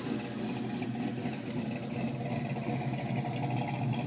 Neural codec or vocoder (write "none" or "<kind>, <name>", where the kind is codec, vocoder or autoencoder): none